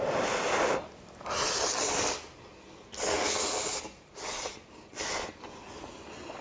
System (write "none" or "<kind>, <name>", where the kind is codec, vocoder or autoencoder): none